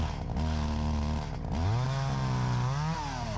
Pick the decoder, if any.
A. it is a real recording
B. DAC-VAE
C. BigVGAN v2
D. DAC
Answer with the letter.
A